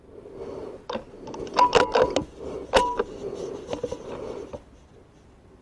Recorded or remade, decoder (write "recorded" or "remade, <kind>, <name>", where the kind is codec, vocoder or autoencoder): recorded